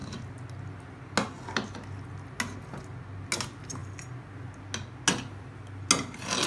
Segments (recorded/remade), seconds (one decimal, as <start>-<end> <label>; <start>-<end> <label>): 0.0-6.5 recorded